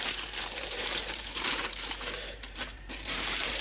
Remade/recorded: remade